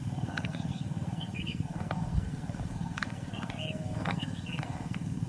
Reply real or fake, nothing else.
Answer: fake